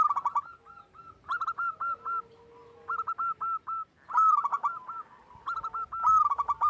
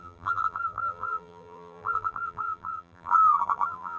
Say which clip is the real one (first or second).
first